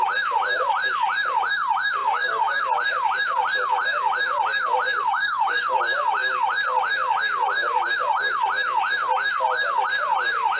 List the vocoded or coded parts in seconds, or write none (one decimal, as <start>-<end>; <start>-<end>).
2.0-2.6; 5.0-5.8